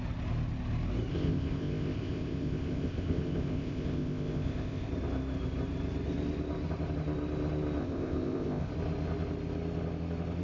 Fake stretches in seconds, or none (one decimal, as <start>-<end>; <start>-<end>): 1.1-4.9; 7.8-8.7